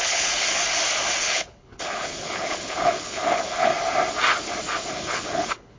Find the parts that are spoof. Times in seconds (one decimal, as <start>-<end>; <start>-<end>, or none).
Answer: 0.0-0.6; 1.2-3.7; 4.9-5.8